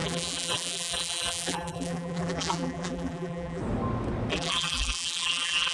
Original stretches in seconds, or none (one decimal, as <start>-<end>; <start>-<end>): 3.6-4.3